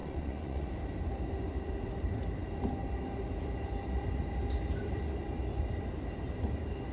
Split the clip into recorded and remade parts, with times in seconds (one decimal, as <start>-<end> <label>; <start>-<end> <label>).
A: 0.0-0.7 remade; 0.7-6.9 recorded